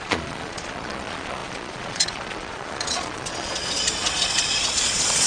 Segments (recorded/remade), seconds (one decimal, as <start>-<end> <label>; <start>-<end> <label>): 0.0-5.3 remade